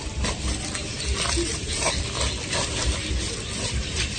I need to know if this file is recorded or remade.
remade